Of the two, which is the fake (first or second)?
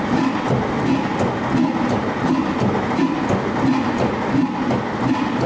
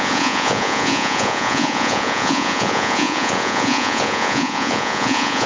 second